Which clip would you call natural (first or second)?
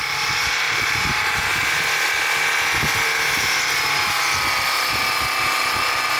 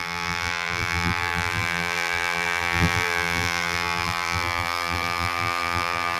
first